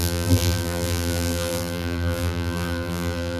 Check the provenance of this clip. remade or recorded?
remade